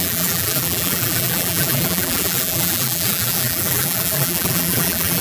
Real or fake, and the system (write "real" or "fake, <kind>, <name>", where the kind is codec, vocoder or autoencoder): fake, vocoder, BigVGAN v2